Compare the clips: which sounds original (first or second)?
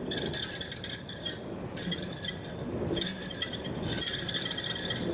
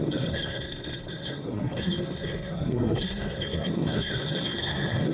first